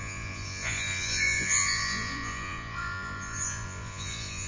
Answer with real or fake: fake